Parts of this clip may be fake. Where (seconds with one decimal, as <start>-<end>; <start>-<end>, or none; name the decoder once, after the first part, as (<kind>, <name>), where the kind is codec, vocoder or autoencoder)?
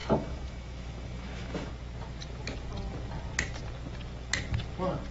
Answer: 0.0-1.7 (autoencoder, DAC-VAE)